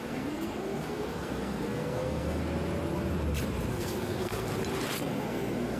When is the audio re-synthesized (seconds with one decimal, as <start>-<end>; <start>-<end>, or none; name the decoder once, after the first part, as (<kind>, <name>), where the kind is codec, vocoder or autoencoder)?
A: 0.0-2.4 (codec, SNAC); 3.7-4.5; 5.0-5.8

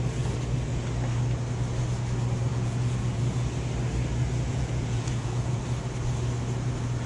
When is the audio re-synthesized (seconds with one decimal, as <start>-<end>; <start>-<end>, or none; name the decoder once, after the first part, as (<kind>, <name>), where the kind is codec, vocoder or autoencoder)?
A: 2.5-3.2 (vocoder, Vocos); 4.5-5.6

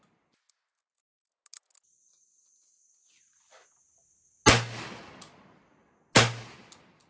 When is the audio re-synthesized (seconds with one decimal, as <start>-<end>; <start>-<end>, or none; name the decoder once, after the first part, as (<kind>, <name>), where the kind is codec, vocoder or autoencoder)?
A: none